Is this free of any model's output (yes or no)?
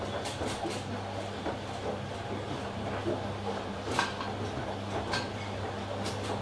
yes